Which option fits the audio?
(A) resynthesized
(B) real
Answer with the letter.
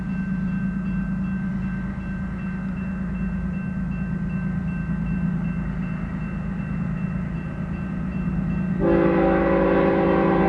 B